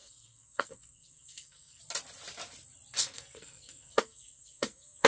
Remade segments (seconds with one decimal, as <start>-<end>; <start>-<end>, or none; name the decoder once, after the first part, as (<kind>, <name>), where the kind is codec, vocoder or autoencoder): 0.0-1.8 (codec, SNAC); 3.0-5.1